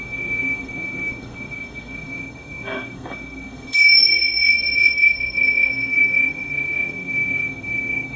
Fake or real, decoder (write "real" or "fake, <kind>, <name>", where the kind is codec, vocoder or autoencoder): fake, codec, SNAC